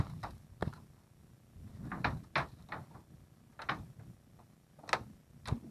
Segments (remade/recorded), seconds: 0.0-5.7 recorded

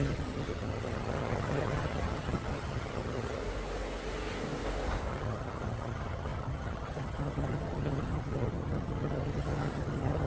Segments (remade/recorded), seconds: 0.0-3.4 remade; 3.4-5.1 recorded; 5.1-10.3 remade

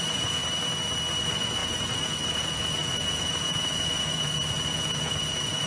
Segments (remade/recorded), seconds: 0.0-0.4 remade; 0.4-1.2 recorded; 1.2-5.7 remade

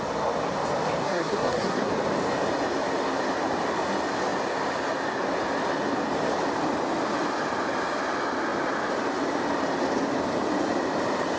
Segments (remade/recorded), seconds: 0.0-1.0 recorded; 1.0-1.9 remade; 1.9-11.4 recorded

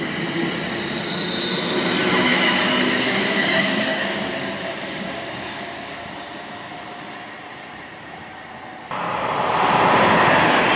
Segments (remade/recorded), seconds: 0.0-2.3 recorded; 2.3-6.0 remade; 6.0-10.8 recorded